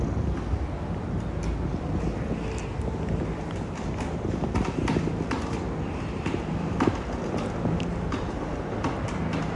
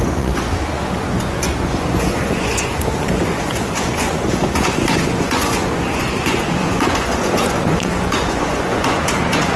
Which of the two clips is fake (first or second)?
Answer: second